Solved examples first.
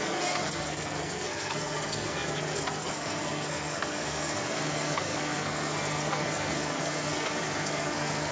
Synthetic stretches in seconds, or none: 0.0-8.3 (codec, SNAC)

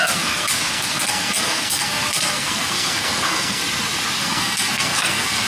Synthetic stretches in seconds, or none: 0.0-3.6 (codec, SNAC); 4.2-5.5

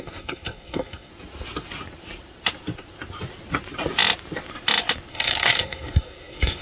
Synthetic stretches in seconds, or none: 0.0-1.1 (codec, SNAC); 5.1-6.6

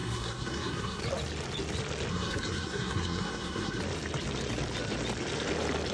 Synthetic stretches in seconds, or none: 0.0-1.0 (codec, SNAC); 2.1-3.8